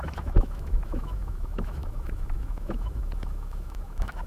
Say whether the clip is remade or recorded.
remade